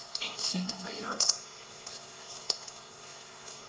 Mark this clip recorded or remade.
remade